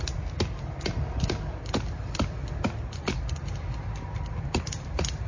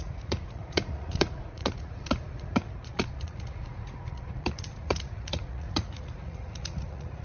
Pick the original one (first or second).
first